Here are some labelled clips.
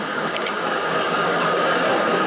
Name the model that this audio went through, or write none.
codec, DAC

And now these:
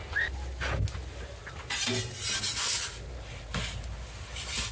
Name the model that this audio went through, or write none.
none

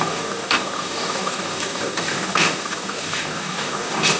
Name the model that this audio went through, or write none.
codec, DAC